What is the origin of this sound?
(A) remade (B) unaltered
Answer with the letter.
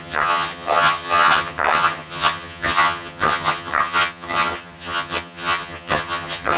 A